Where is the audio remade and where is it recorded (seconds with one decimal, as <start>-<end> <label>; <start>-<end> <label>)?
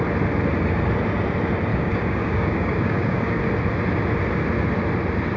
0.0-1.7 recorded; 1.7-3.4 remade; 3.4-5.4 recorded